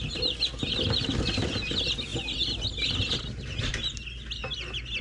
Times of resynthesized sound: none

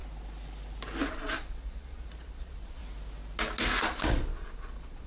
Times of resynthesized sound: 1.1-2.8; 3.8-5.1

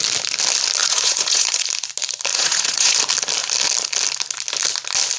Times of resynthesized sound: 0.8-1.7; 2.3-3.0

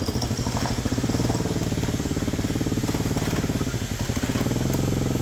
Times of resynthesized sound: none